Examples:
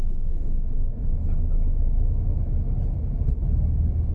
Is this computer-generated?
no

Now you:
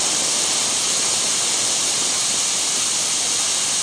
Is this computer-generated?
no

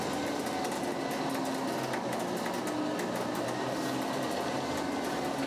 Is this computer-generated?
no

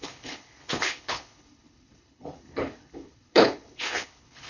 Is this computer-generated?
yes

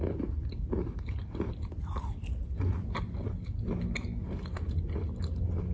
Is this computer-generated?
no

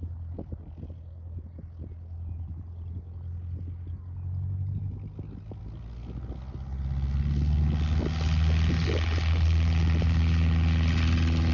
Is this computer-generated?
no